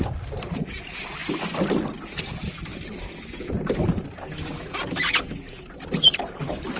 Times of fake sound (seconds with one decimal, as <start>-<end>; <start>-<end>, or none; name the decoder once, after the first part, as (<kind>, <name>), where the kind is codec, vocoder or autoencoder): none